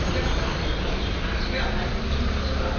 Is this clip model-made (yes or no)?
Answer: no